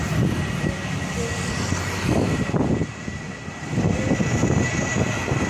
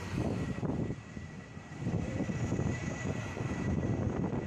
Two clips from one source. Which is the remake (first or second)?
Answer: second